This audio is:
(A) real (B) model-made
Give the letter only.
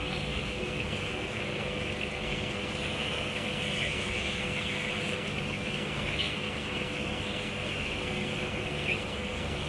B